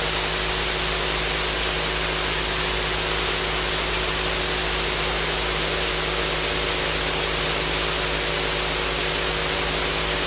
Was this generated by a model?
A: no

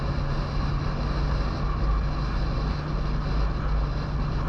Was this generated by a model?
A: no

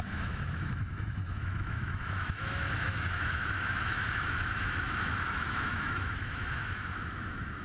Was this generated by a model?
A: yes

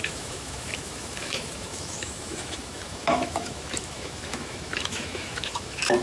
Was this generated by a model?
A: yes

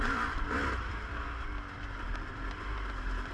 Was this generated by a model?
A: no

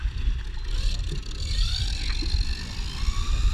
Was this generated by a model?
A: no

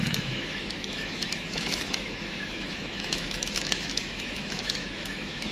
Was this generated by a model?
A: yes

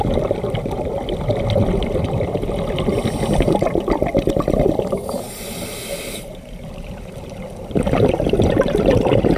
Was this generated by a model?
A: no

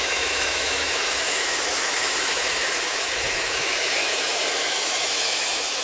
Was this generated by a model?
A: yes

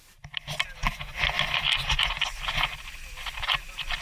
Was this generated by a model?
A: no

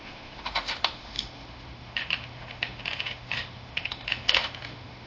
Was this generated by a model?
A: yes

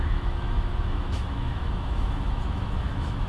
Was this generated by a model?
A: yes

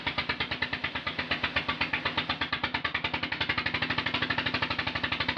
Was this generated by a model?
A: no